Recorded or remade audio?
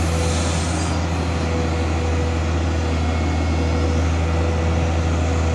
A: recorded